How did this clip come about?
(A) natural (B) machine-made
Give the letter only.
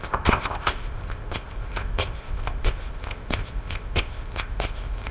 B